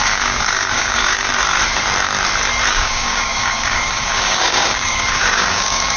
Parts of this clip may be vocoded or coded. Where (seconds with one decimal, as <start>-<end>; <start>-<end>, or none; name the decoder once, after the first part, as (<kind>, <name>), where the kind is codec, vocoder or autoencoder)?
0.0-1.3 (codec, DAC); 2.7-6.0